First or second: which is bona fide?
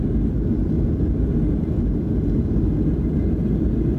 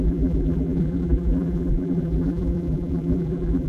first